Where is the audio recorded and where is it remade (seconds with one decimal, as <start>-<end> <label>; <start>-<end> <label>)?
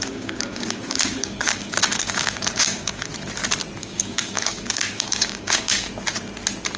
0.0-3.1 remade; 3.1-3.8 recorded; 3.8-5.9 remade; 5.9-6.8 recorded